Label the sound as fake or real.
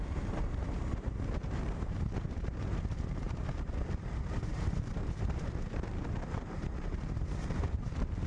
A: fake